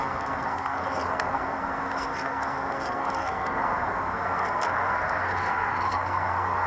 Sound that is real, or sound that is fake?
fake